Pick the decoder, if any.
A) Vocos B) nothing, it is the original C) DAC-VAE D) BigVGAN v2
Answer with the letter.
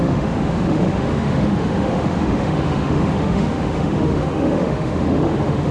C